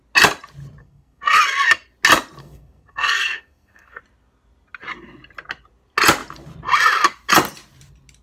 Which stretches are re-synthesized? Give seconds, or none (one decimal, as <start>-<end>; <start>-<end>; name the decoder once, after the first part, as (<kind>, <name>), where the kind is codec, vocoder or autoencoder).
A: 0.8-1.4 (codec, SNAC); 2.4-4.0